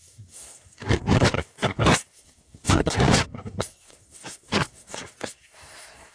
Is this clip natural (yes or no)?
no